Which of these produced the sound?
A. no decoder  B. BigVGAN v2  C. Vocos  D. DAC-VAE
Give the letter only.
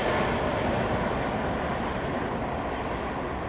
A